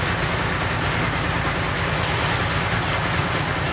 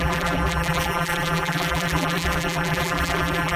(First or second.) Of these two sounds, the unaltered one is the first